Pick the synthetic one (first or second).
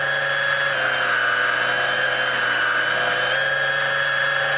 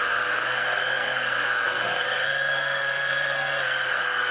second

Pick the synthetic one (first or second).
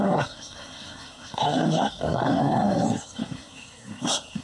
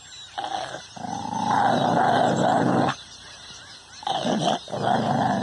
first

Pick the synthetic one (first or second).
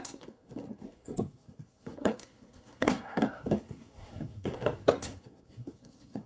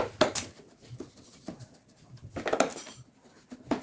first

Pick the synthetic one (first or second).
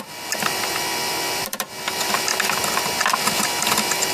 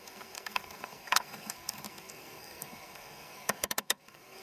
second